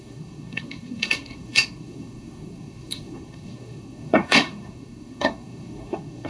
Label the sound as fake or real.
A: fake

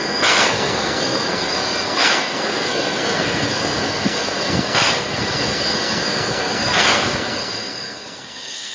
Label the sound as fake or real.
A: fake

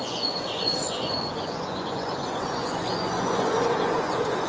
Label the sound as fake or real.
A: fake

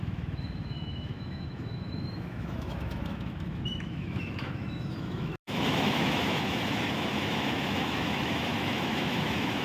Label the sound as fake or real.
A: fake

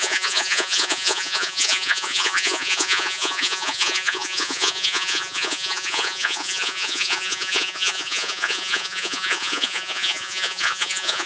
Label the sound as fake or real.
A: fake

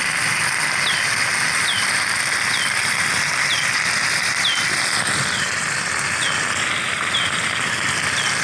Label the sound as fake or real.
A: fake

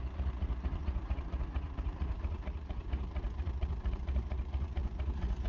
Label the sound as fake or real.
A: fake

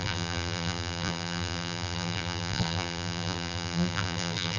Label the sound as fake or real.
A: fake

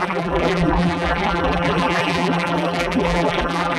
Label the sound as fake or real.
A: fake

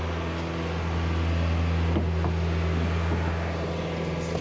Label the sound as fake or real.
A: real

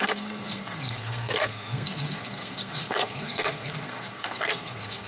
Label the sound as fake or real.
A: fake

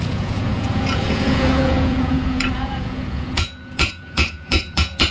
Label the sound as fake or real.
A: fake